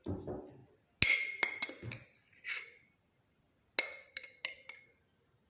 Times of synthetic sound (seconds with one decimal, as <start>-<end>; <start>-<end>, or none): none